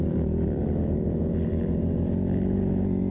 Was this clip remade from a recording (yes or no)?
yes